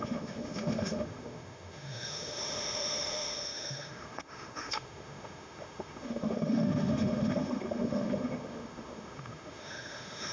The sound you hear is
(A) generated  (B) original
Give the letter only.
A